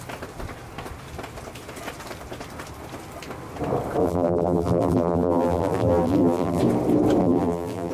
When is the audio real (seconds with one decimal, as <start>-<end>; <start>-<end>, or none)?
0.0-4.0; 6.6-7.2